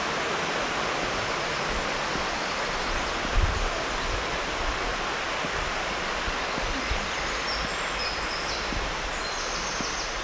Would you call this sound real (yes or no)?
yes